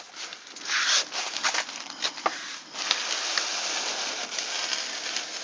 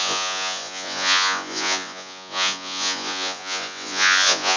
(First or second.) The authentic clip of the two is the first